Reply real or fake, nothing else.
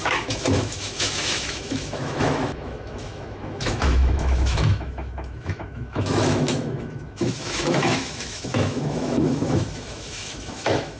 fake